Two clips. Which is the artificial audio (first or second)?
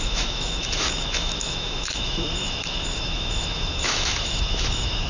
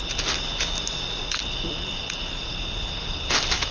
first